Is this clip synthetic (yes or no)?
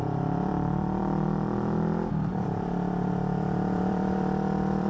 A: yes